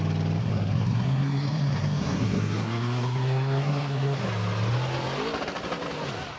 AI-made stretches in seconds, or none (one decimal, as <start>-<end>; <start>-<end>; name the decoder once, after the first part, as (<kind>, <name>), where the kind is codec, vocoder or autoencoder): 0.4-4.2 (codec, SNAC)